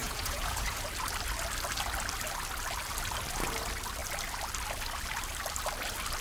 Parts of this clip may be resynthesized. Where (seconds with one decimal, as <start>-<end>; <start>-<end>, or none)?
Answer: 0.0-0.8